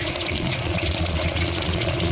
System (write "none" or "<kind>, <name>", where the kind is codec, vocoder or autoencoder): vocoder, Vocos